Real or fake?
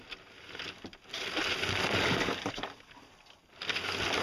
real